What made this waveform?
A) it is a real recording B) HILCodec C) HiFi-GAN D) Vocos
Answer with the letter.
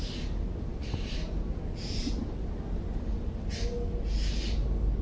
A